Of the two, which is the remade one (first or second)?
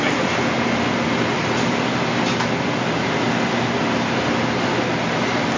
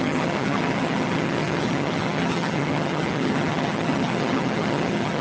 second